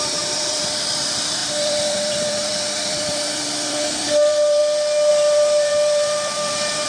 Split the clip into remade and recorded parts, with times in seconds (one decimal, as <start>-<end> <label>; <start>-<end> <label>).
0.0-4.6 remade; 4.6-5.1 recorded; 5.1-6.9 remade